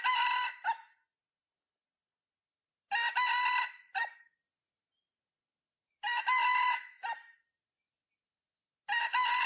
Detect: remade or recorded recorded